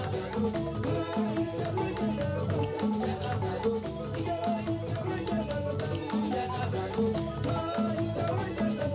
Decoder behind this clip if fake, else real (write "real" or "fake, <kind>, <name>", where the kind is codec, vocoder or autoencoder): real